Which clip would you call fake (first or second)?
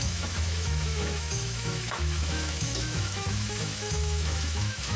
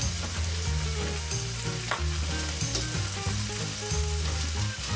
first